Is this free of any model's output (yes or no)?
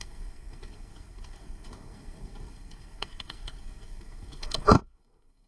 no